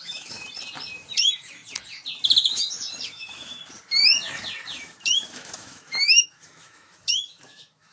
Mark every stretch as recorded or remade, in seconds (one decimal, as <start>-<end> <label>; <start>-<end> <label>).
0.0-0.4 remade; 0.4-1.2 recorded; 1.2-1.6 remade; 1.6-3.1 recorded; 3.1-3.6 remade; 3.6-4.7 recorded; 4.7-7.9 remade